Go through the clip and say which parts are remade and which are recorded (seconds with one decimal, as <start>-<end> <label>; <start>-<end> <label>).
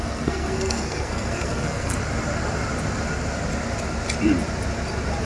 0.0-2.0 remade; 2.0-5.2 recorded